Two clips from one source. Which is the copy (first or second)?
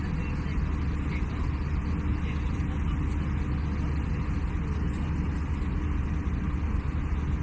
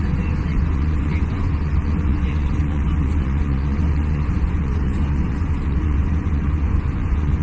second